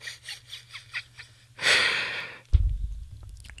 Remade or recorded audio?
recorded